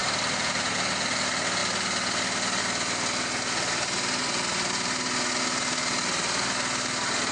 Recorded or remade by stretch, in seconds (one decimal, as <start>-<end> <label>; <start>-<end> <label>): 0.0-0.7 remade; 0.7-7.3 recorded